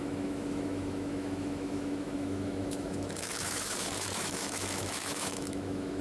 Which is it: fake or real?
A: fake